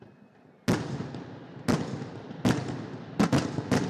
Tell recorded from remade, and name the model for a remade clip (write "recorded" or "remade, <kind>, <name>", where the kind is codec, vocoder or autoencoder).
recorded